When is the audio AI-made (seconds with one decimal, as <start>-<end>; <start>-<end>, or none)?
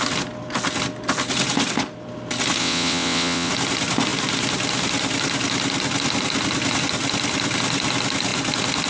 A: 2.6-3.5